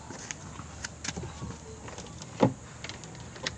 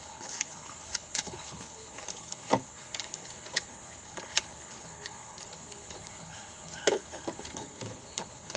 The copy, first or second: second